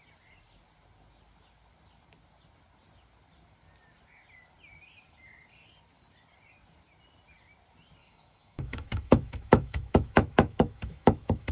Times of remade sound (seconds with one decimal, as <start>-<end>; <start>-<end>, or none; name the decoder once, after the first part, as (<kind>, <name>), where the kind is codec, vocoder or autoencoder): 8.0-11.5 (autoencoder, DAC-VAE)